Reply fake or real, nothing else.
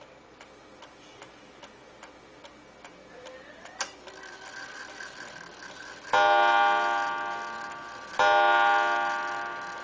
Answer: real